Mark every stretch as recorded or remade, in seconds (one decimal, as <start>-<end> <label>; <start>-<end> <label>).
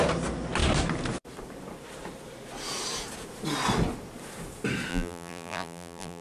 0.0-4.9 recorded; 4.9-6.2 remade